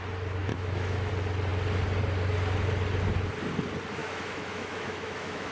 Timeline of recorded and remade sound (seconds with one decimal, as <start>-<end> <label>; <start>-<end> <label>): 0.0-0.5 recorded; 0.5-1.1 remade; 1.1-4.0 recorded; 4.0-5.5 remade